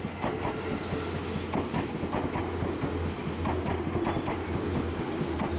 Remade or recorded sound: recorded